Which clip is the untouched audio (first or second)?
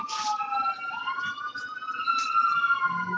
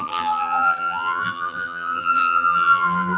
first